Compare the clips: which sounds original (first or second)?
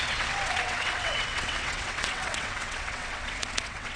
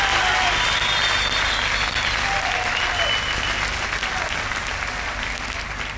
second